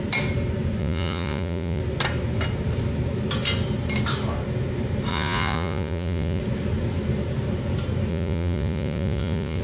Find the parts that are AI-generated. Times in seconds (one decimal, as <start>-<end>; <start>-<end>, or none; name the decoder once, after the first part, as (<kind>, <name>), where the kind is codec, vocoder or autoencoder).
0.8-1.8 (vocoder, Vocos); 5.1-6.4; 8.1-9.6